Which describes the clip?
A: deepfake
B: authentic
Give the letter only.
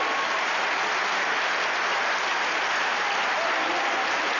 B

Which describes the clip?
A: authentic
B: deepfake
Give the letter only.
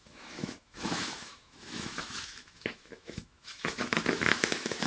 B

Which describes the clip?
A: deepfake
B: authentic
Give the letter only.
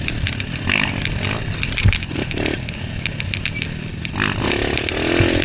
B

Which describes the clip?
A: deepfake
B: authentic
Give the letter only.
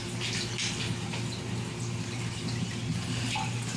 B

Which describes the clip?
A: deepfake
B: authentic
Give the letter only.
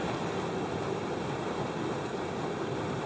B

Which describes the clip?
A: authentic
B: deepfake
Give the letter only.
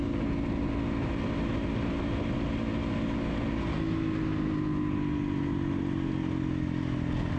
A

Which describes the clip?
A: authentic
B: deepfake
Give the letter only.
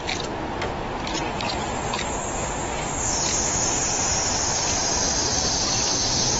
A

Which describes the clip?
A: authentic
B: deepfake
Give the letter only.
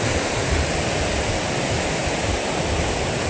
B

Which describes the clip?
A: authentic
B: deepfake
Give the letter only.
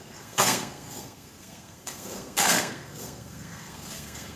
B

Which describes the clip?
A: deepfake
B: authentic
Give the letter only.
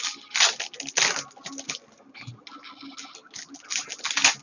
B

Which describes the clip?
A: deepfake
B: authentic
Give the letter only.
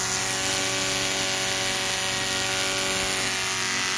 B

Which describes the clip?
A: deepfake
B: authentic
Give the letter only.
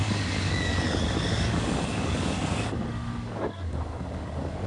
A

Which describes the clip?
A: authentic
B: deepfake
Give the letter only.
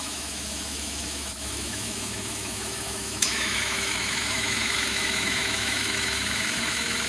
B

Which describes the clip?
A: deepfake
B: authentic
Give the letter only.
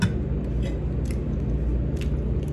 B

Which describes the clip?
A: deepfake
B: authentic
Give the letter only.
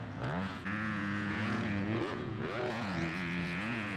A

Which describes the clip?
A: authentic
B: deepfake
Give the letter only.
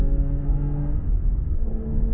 B